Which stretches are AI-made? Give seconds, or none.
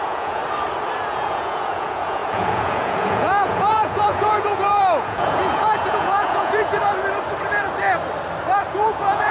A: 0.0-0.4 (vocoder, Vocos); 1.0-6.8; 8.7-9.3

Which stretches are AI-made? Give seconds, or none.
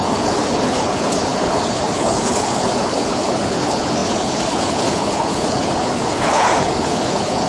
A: 0.0-7.5 (codec, HILCodec)